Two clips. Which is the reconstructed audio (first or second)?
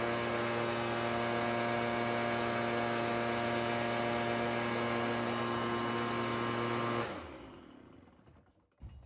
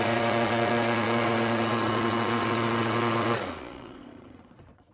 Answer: second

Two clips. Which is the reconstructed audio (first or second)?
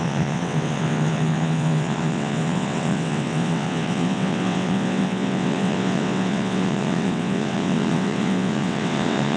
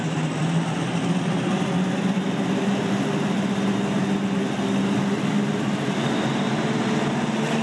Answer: first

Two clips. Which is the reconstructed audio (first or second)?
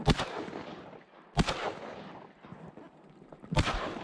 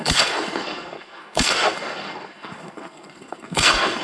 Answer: second